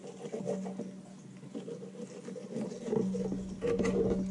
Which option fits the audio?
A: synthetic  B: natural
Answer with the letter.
B